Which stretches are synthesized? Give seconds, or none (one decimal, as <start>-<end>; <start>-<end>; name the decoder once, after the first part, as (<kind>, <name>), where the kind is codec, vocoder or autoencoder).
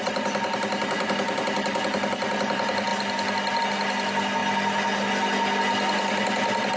none